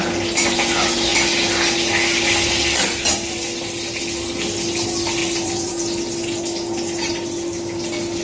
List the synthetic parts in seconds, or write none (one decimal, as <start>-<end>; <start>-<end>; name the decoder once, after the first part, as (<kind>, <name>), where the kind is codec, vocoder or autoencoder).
5.2-5.7 (vocoder, BigVGAN v2)